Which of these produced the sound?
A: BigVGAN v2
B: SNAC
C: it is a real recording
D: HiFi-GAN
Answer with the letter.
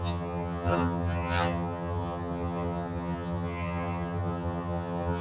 D